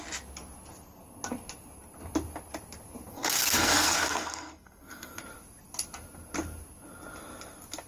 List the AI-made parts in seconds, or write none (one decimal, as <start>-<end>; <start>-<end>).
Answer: 3.1-5.2